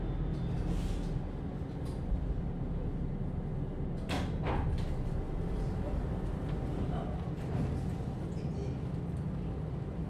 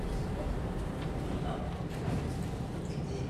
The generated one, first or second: second